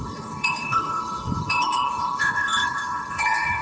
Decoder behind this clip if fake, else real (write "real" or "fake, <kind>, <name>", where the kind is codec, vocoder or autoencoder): fake, codec, HILCodec